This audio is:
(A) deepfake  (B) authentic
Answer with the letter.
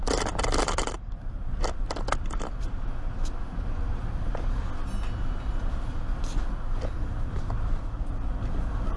B